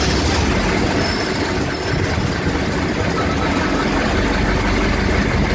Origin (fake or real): real